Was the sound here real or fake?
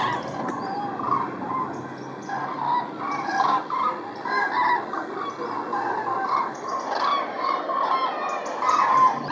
real